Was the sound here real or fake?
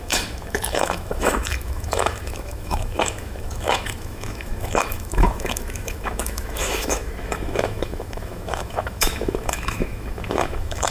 fake